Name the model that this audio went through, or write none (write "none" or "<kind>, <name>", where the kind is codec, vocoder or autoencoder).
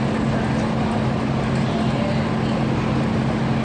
none